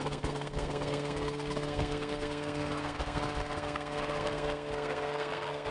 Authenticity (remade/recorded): remade